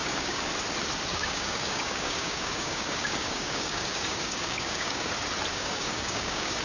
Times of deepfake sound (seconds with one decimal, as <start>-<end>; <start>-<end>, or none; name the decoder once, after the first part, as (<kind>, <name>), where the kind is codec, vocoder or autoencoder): 0.0-0.5 (codec, DAC); 1.1-5.1; 5.5-6.6

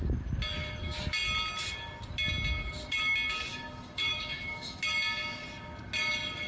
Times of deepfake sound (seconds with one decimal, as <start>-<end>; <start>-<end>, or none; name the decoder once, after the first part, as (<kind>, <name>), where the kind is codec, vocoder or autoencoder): 3.5-4.8 (autoencoder, DAC-VAE)

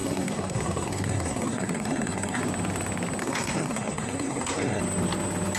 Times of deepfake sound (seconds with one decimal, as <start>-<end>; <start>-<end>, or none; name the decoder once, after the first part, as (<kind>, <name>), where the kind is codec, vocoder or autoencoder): 0.0-2.4 (codec, SNAC); 3.2-4.8

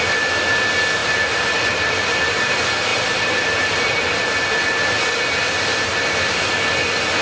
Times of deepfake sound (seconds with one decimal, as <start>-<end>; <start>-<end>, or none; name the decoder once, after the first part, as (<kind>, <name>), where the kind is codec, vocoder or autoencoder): 1.0-2.5 (vocoder, BigVGAN v2); 2.9-4.3